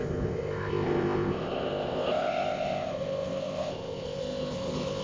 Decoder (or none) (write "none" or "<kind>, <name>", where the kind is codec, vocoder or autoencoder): codec, ZipCodec